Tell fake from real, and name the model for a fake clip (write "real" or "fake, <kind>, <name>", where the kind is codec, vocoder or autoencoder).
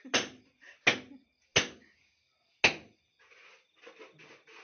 real